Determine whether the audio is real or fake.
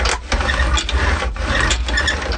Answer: real